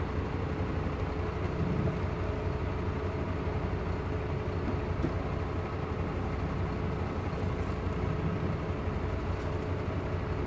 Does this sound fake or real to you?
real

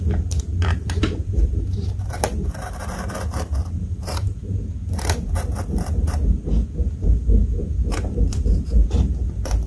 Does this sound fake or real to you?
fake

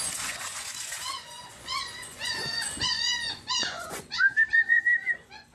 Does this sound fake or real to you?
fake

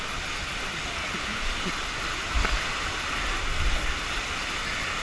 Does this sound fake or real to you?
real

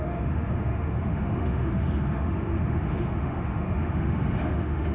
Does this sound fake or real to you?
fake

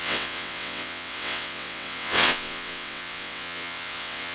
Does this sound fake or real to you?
fake